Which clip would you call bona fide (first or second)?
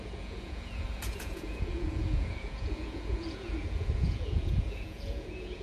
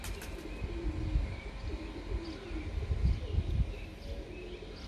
second